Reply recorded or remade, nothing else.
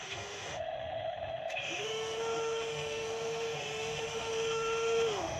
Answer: remade